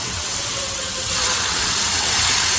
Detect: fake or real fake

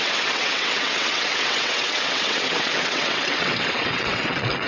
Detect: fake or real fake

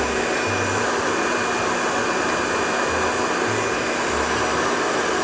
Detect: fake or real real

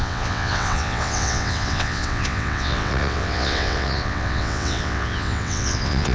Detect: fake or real fake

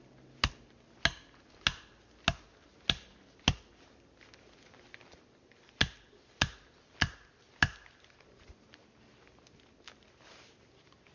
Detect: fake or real real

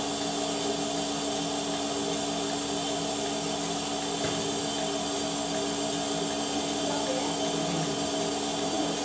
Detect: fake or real real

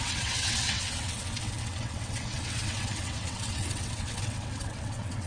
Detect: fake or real fake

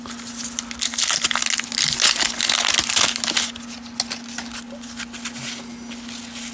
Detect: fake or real real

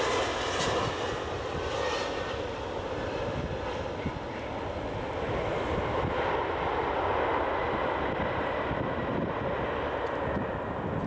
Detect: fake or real real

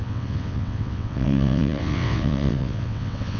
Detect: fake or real fake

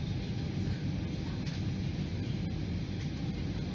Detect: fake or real real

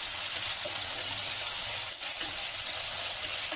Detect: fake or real fake